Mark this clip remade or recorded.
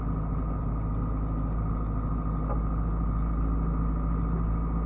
recorded